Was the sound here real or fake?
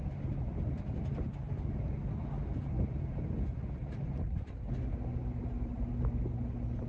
real